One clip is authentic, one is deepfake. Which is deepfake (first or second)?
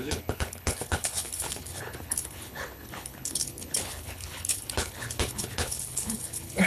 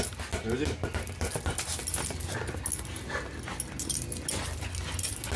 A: first